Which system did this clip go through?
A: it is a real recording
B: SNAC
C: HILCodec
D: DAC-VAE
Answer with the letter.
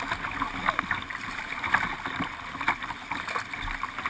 A